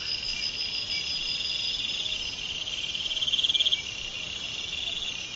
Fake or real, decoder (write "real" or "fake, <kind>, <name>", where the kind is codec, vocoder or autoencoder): real